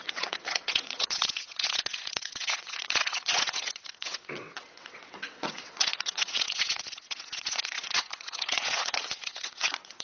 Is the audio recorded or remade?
remade